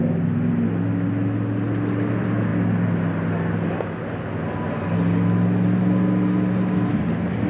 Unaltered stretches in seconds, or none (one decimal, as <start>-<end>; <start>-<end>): 0.0-7.5